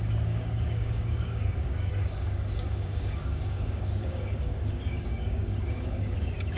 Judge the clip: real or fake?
fake